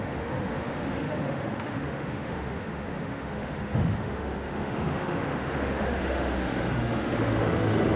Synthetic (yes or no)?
yes